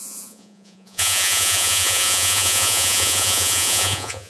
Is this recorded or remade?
remade